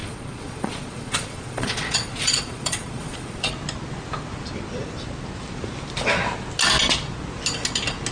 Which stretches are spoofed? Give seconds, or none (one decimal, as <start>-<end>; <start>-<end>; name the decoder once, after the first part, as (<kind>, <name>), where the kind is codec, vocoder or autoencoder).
0.0-3.5 (vocoder, Vocos)

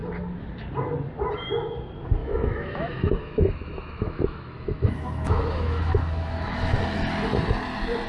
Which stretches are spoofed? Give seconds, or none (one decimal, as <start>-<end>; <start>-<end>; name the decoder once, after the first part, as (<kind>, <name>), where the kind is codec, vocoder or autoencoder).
2.2-6.8 (autoencoder, DAC-VAE)

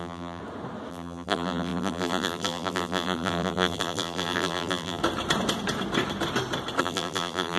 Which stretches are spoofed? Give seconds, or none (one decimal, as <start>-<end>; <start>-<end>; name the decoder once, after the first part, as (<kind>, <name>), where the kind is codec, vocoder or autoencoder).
0.0-0.4 (vocoder, BigVGAN v2); 0.9-5.0; 6.8-7.6